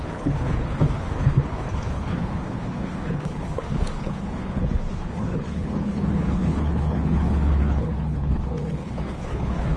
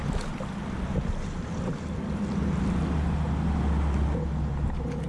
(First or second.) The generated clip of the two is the first